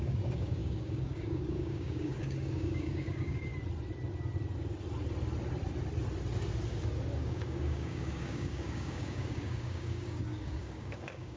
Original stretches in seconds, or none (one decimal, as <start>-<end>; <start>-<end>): 3.5-7.2